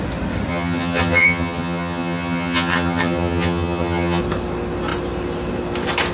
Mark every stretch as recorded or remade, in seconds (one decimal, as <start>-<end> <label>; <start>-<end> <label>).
0.0-0.5 recorded; 0.5-4.2 remade; 4.2-6.1 recorded